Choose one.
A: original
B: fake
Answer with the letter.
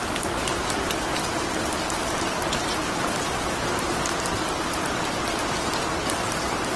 A